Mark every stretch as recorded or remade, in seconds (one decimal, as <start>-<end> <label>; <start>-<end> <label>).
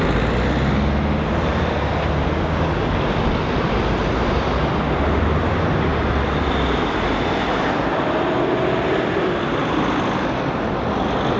0.0-5.9 recorded; 5.9-7.5 remade; 7.5-11.4 recorded